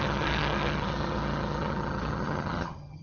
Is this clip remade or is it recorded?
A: remade